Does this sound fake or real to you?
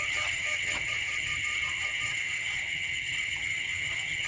fake